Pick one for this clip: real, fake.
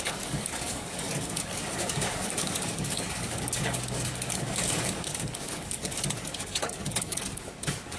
fake